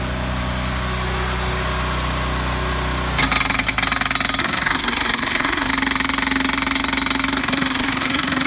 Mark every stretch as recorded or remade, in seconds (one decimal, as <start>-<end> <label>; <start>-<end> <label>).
0.0-4.4 recorded; 4.4-5.7 remade; 5.7-7.4 recorded; 7.4-8.5 remade